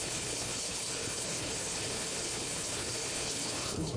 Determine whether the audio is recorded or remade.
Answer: remade